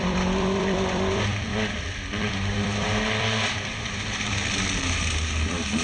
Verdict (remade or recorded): remade